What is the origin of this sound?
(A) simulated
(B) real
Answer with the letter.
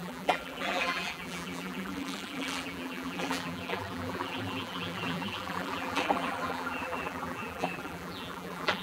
A